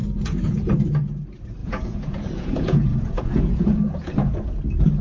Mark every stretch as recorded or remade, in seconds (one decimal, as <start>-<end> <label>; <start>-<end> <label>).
0.0-0.8 remade; 0.8-1.6 recorded; 1.6-4.6 remade; 4.6-5.0 recorded